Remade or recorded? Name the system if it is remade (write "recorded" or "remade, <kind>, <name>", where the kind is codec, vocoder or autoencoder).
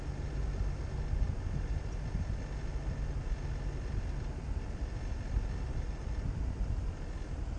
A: recorded